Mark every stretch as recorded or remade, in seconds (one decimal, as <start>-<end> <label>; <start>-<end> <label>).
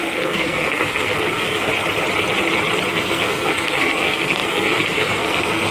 0.0-1.7 remade; 1.7-2.9 recorded; 2.9-5.7 remade